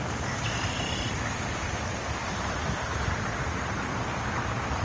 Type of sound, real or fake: real